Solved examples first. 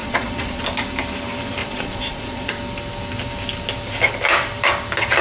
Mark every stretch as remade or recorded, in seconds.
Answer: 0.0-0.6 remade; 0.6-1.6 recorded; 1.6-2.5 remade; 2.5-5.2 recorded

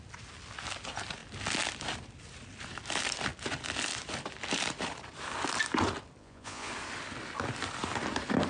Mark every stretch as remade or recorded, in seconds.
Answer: 0.0-6.2 recorded; 6.2-6.7 remade; 6.7-8.5 recorded

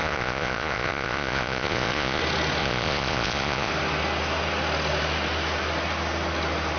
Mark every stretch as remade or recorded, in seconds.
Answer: 0.0-2.2 remade; 2.2-2.6 recorded; 2.6-3.7 remade; 3.7-6.8 recorded

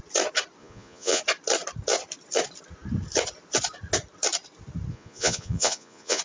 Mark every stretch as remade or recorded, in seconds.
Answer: 0.0-0.6 recorded; 0.6-1.2 remade; 1.2-4.9 recorded; 4.9-6.2 remade

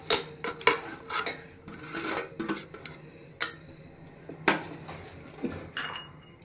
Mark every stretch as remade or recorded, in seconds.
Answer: 0.0-6.4 recorded

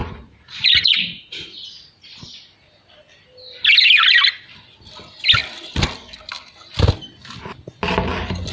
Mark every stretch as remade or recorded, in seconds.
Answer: 0.0-1.9 remade; 1.9-8.5 recorded